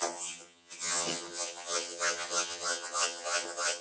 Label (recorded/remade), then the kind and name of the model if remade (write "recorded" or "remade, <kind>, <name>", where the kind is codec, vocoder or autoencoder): remade, vocoder, HiFi-GAN